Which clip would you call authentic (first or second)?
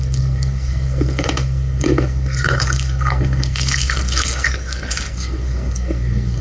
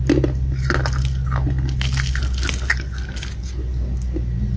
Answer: second